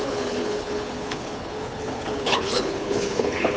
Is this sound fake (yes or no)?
yes